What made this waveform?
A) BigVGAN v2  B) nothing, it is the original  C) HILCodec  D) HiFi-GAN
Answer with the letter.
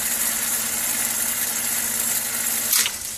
A